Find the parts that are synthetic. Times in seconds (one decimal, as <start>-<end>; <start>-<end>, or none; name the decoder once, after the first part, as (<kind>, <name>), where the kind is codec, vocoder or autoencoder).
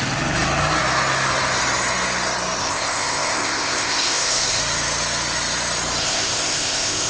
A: 2.6-4.6 (codec, ZipCodec); 6.0-7.1